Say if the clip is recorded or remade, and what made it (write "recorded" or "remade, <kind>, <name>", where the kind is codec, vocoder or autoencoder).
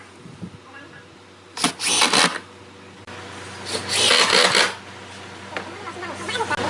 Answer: recorded